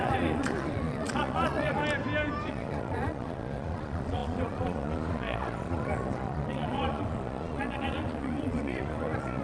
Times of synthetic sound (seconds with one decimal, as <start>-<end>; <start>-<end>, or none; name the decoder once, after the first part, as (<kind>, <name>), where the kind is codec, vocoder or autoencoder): 0.0-1.8 (vocoder, Vocos); 2.5-9.4